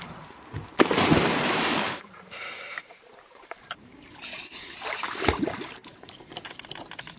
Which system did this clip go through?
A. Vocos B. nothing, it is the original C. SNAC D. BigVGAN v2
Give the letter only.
D